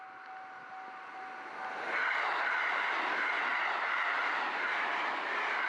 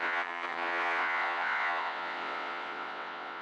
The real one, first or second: first